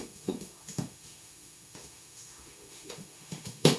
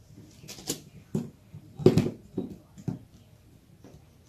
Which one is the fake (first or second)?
first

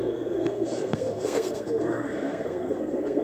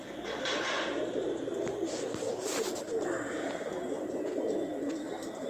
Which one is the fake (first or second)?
first